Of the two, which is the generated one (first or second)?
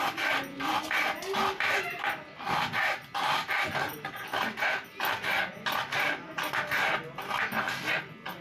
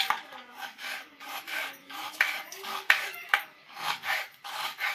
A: second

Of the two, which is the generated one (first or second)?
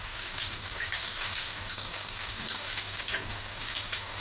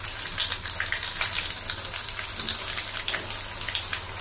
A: first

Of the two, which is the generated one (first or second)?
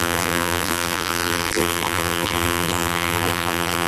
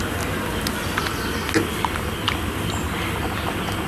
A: first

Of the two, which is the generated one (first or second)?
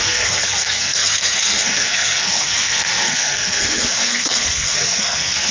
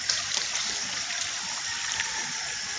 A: first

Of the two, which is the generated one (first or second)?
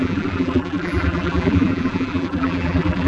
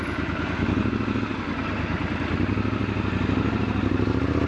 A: first